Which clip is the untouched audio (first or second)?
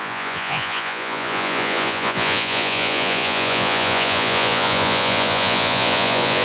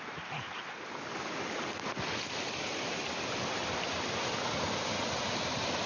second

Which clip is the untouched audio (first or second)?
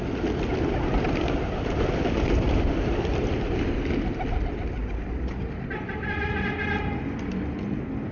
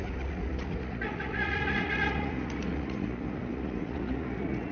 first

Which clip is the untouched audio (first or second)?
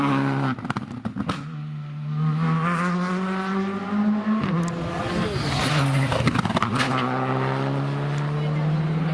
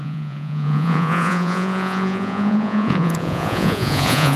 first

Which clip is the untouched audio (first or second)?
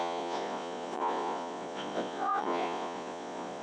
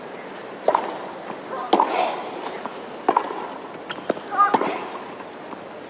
second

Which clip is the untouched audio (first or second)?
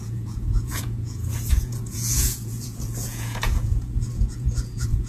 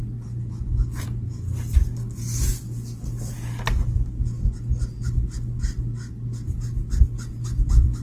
second